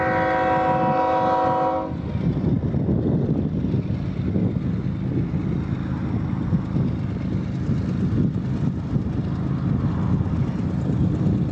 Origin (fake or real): real